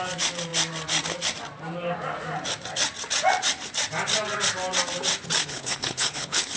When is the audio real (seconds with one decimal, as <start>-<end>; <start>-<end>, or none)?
0.0-5.4

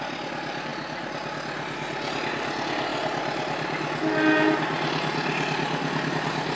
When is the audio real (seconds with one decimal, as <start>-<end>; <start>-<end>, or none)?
0.0-6.6

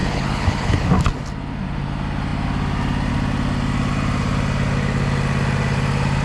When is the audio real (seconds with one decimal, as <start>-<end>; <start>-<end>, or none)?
0.9-6.2

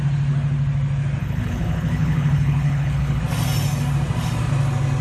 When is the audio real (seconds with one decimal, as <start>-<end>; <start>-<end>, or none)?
0.0-1.2; 3.2-5.0

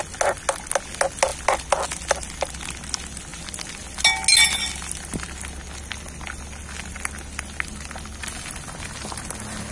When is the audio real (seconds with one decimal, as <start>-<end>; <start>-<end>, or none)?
0.0-9.7

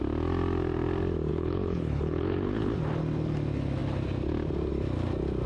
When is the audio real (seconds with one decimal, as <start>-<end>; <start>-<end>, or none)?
0.0-1.3; 2.7-5.5

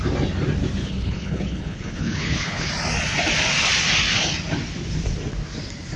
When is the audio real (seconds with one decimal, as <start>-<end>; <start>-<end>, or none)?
0.0-0.8; 2.7-6.0